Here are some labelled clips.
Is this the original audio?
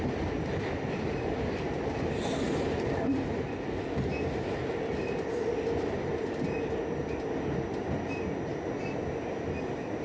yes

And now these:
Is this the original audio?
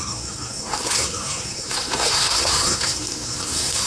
no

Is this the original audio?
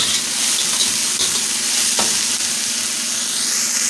yes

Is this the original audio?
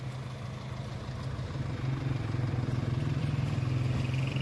yes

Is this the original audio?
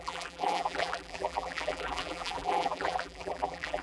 no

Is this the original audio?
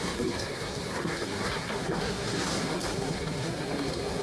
no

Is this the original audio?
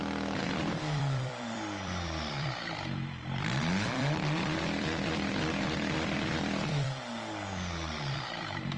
no